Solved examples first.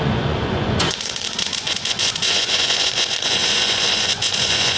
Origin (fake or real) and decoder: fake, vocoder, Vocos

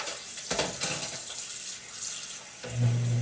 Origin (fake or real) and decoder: real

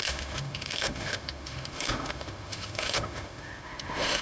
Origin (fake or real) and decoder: fake, autoencoder, DAC-VAE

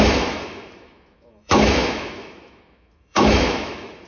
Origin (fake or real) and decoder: fake, autoencoder, DAC-VAE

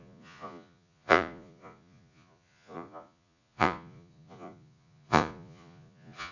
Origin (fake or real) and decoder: fake, vocoder, Vocos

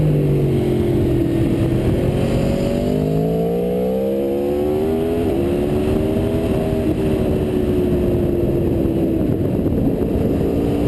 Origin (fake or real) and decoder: real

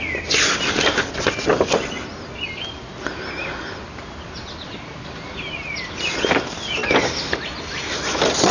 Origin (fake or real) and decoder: real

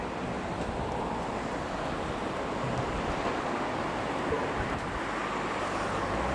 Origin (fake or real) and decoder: real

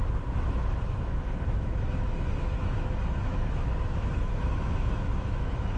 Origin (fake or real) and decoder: fake, autoencoder, DAC-VAE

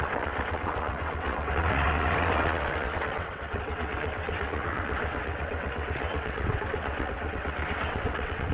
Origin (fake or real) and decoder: fake, vocoder, WaveNeXt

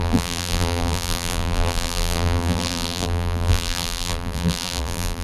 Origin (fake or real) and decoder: fake, vocoder, BigVGAN v2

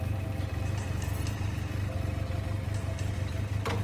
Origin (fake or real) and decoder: real